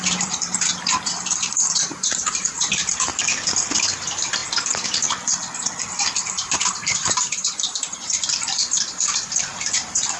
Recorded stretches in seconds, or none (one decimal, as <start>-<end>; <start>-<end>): 3.1-3.9; 4.4-6.2